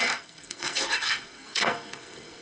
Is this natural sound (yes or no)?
no